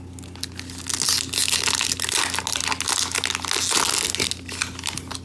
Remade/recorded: recorded